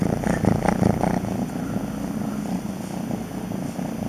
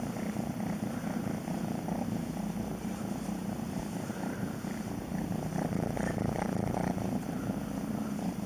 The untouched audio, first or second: first